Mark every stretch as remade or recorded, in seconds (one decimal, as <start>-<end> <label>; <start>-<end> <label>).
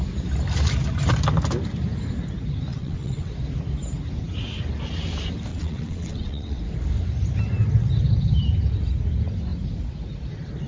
0.0-2.7 recorded; 2.7-3.3 remade; 3.3-5.5 recorded; 5.5-6.6 remade; 6.6-10.7 recorded